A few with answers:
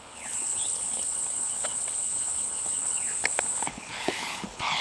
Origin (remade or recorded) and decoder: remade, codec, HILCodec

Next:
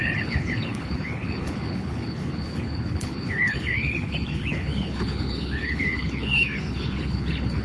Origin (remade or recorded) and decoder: remade, codec, HILCodec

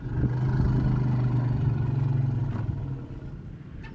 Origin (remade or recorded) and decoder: recorded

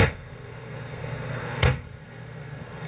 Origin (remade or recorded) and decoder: remade, codec, SNAC